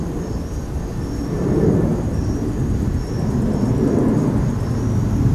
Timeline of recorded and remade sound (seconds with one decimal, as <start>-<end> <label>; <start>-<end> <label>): 0.0-5.3 recorded